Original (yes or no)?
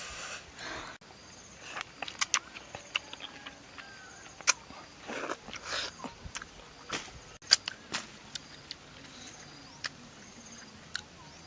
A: yes